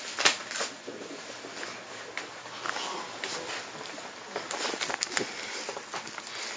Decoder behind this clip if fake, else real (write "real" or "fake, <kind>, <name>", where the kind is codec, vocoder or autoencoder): real